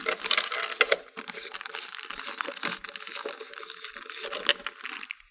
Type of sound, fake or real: real